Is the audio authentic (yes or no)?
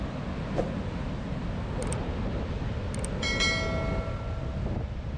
yes